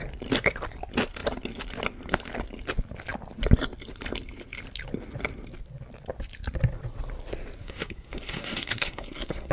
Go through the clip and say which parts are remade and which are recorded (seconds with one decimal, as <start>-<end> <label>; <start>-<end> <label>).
0.0-7.6 recorded; 7.6-9.5 remade